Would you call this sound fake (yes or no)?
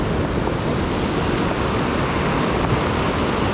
no